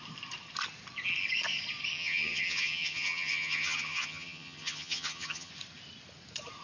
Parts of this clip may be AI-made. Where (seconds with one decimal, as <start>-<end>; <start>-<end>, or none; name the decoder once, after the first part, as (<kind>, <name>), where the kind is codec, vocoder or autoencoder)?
1.9-5.5 (vocoder, HiFi-GAN)